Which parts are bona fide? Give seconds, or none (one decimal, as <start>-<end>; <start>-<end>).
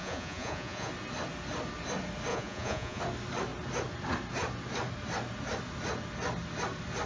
0.9-2.3; 3.0-7.1